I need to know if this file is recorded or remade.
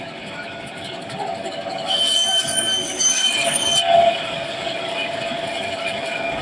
remade